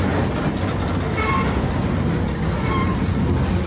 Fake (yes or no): no